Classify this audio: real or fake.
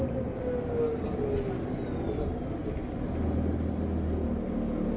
real